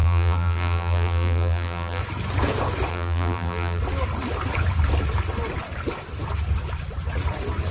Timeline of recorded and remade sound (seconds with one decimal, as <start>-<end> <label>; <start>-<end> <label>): 0.0-2.0 remade; 2.0-2.9 recorded; 2.9-3.8 remade; 3.8-7.7 recorded